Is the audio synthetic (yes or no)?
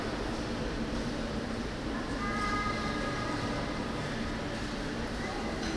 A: no